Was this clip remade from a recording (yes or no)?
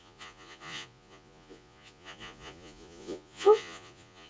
yes